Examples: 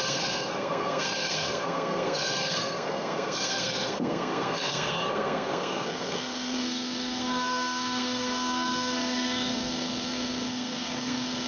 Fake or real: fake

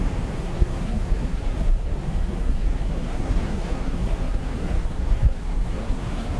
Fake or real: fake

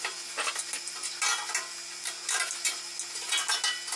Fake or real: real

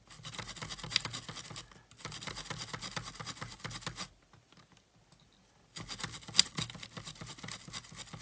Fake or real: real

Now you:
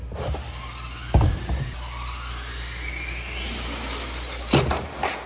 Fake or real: real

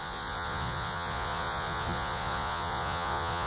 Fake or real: fake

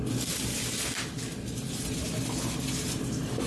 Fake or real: real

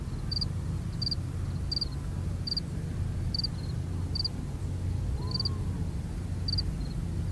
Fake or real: real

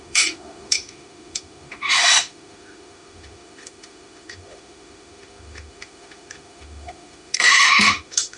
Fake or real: fake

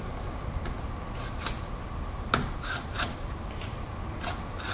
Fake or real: real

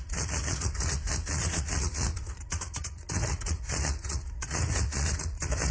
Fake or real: fake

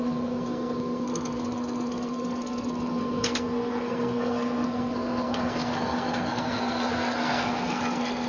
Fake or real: fake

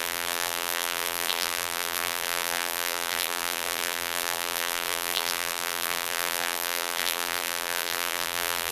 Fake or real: fake